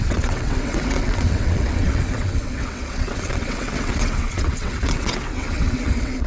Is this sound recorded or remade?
remade